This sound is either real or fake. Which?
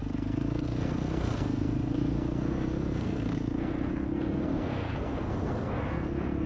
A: fake